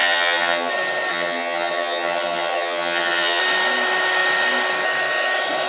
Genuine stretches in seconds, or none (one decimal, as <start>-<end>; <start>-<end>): 0.7-1.1; 3.4-5.7